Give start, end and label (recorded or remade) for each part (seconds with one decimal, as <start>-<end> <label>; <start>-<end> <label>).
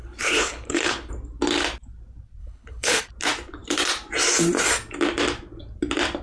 0.0-1.1 remade; 1.1-2.4 recorded; 2.4-3.0 remade; 3.0-6.2 recorded